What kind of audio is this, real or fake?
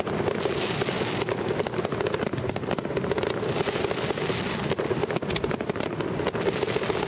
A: real